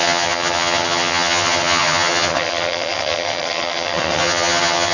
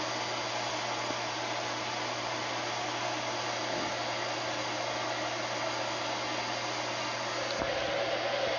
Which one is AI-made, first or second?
first